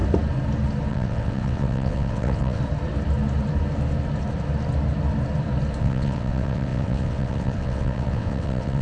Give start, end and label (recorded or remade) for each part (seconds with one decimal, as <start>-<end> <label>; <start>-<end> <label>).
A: 0.0-0.9 recorded; 0.9-2.6 remade; 2.6-5.8 recorded; 5.8-8.8 remade